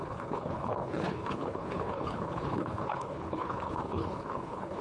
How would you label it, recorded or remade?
remade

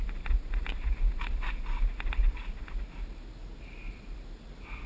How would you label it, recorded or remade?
recorded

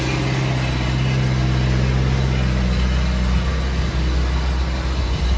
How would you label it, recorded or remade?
recorded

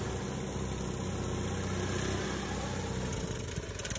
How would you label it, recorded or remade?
recorded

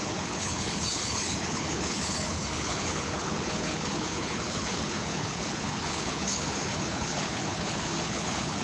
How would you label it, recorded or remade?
remade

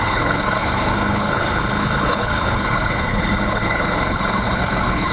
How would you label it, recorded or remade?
remade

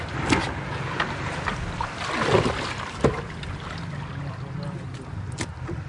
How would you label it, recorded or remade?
recorded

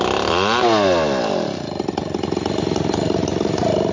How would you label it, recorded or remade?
recorded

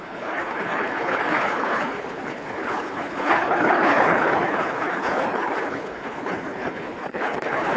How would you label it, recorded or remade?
remade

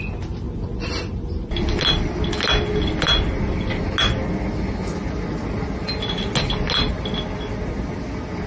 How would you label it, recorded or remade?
recorded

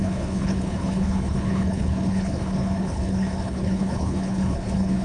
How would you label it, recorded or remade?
remade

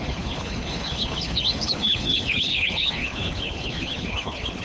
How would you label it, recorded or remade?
remade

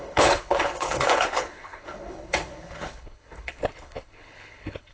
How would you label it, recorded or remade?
remade